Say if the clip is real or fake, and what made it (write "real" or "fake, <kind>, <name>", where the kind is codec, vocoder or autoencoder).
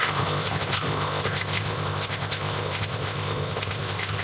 fake, codec, ZipCodec